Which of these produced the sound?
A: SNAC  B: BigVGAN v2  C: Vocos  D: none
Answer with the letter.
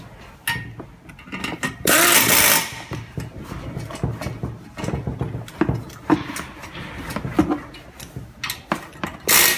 D